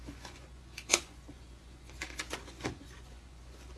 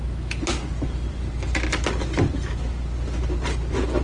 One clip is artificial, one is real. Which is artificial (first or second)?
first